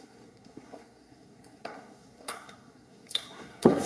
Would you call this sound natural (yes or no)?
no